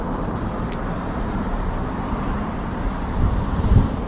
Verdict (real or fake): fake